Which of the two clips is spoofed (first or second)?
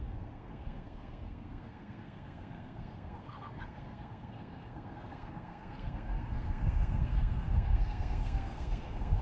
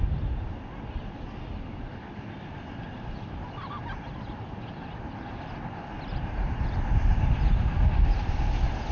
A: first